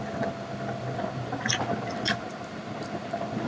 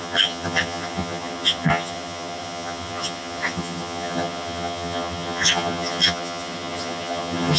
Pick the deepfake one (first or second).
second